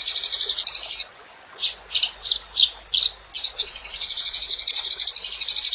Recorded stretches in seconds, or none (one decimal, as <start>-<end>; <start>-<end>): 0.0-1.1; 2.3-3.3; 4.9-5.7